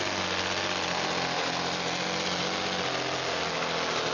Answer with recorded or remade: recorded